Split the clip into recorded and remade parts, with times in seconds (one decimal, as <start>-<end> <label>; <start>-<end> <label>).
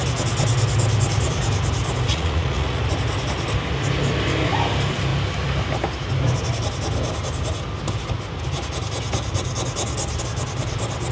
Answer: 0.0-2.1 recorded; 2.1-2.8 remade; 2.8-11.1 recorded